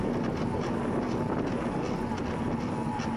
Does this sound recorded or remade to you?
recorded